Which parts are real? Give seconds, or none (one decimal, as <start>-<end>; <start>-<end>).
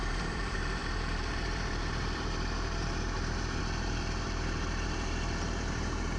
none